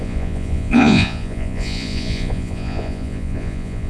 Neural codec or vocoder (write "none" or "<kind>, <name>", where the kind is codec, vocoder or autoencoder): vocoder, Vocos